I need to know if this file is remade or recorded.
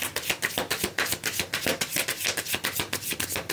recorded